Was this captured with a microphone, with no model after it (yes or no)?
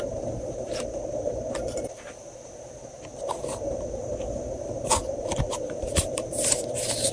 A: no